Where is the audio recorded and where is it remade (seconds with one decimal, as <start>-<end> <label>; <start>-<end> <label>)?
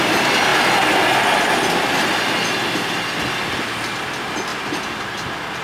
0.0-5.6 recorded